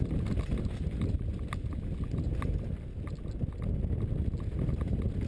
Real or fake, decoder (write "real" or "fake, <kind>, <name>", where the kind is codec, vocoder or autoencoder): real